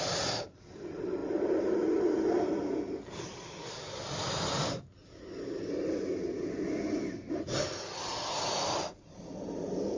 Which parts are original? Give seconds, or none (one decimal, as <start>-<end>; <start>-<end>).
0.0-10.0